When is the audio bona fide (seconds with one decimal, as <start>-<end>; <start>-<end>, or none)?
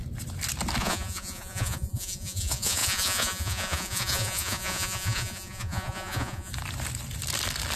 0.0-0.8; 6.5-7.8